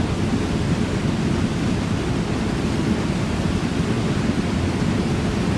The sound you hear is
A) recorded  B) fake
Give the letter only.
A